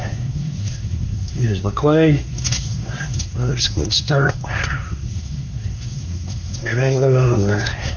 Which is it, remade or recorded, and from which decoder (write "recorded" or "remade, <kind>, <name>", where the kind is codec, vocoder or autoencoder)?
remade, codec, SNAC